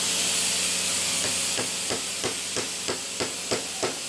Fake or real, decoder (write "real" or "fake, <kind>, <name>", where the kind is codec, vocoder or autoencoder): real